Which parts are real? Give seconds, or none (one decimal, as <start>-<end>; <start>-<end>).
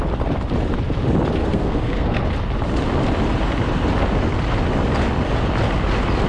0.0-1.4; 2.2-6.3